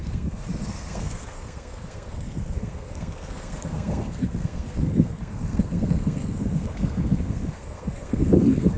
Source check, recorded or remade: remade